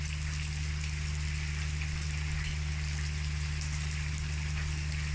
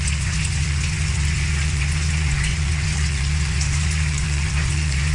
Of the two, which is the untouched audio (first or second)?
first